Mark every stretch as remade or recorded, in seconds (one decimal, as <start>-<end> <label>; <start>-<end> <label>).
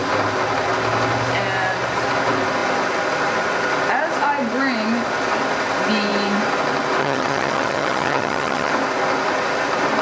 0.0-7.0 recorded; 7.0-8.7 remade; 8.7-10.0 recorded